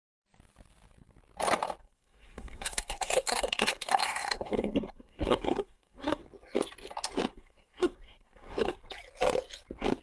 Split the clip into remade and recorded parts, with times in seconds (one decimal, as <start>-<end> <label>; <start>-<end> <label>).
0.0-1.8 recorded; 1.8-6.2 remade; 6.2-7.3 recorded; 7.3-8.8 remade; 8.8-10.0 recorded